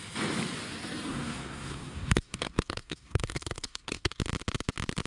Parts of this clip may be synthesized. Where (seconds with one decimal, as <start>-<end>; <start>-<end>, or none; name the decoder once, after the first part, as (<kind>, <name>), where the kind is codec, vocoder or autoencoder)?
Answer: 1.1-4.2 (codec, SNAC)